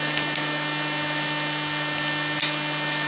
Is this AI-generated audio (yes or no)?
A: no